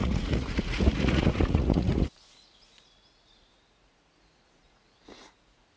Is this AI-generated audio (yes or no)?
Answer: yes